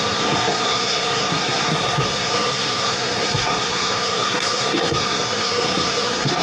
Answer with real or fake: fake